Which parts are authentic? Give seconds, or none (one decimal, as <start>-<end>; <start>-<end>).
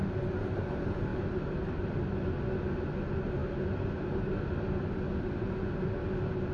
0.0-6.5